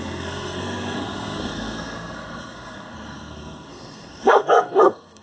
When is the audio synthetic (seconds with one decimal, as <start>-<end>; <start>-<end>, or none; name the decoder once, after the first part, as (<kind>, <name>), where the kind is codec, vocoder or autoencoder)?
0.0-5.2 (codec, SNAC)

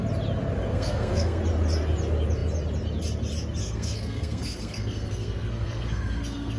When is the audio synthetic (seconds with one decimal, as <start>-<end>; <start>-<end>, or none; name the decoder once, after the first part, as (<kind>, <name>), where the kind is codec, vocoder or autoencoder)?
0.7-1.4 (codec, SNAC); 3.6-6.6

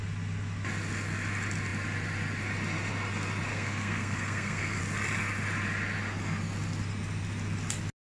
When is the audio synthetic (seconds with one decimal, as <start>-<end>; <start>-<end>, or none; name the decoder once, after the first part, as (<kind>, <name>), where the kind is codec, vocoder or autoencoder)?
3.5-4.8 (codec, SNAC)

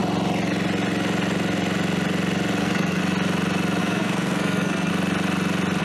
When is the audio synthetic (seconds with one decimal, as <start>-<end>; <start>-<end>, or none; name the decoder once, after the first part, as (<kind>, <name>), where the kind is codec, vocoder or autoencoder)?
2.6-3.0 (codec, SNAC); 3.8-4.9

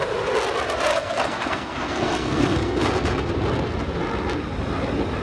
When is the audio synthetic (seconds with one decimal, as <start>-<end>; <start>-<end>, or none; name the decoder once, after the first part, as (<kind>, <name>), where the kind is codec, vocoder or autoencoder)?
0.9-3.3 (codec, SNAC)

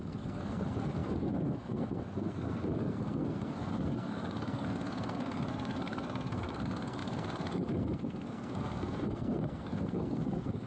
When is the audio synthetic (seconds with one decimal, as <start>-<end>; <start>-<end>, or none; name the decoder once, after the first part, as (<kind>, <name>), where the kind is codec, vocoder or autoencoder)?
0.0-10.7 (codec, SNAC)